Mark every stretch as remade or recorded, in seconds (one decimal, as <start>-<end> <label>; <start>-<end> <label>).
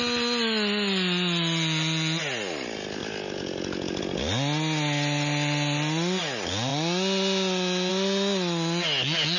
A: 0.0-9.4 recorded